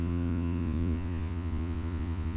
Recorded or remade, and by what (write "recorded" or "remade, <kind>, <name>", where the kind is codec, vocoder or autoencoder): remade, vocoder, Vocos